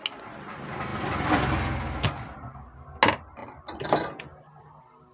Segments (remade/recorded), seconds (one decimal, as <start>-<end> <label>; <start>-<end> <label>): 0.0-5.1 recorded